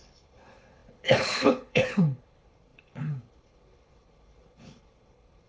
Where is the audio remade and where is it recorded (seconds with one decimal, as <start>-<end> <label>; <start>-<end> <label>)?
0.0-5.5 remade